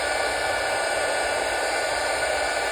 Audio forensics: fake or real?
real